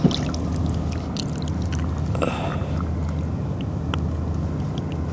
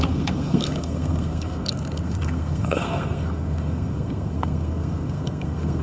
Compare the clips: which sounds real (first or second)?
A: first